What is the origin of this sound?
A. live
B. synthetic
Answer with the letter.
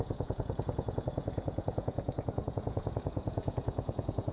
B